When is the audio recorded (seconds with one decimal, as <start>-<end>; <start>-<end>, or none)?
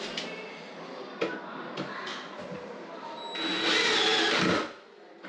0.0-5.3